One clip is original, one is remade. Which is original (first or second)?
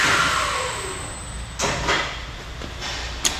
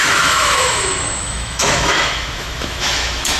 first